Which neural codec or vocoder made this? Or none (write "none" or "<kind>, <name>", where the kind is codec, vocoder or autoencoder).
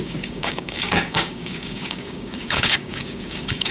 codec, DAC